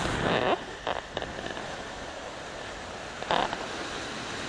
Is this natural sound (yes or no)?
yes